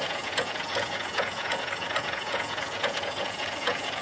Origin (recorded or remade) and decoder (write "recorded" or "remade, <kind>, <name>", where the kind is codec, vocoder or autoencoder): remade, vocoder, Vocos